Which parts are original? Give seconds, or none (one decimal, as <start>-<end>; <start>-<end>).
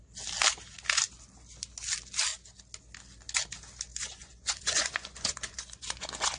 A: 0.0-3.9